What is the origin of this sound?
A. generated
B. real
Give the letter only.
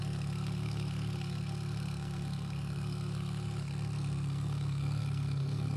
A